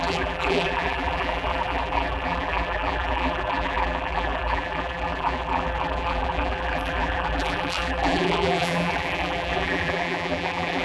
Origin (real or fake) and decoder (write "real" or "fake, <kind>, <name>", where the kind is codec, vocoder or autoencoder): fake, vocoder, BigVGAN v2